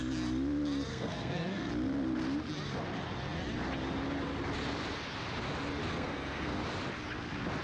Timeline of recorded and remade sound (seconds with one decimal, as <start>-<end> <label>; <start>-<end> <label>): 0.0-0.9 recorded; 0.9-1.7 remade; 1.7-5.9 recorded; 5.9-6.6 remade; 6.6-7.6 recorded